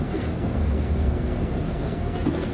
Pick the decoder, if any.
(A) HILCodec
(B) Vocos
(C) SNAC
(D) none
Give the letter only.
C